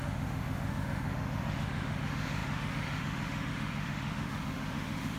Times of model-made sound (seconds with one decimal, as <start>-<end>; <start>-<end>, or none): 0.0-5.2